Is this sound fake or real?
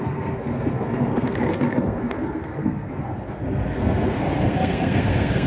fake